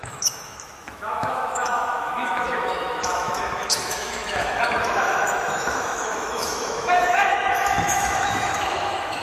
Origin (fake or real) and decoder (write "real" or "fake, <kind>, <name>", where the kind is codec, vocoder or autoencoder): fake, autoencoder, DAC-VAE